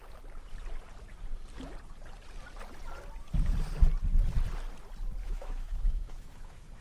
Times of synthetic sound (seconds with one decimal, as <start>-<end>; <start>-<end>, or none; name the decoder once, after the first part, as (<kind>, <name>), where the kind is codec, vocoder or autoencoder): 5.2-6.8 (autoencoder, DAC-VAE)